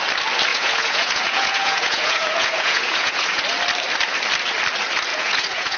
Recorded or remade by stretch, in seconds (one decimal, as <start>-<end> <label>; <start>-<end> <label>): 0.0-0.5 recorded; 0.5-3.4 remade; 3.4-5.1 recorded; 5.1-5.8 remade